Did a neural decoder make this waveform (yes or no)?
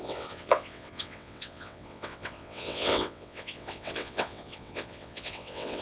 yes